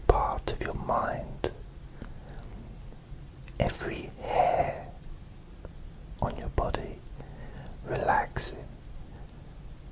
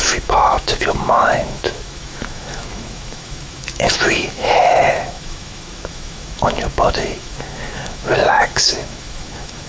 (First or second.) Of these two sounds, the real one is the first